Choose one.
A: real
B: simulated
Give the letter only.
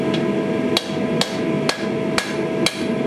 A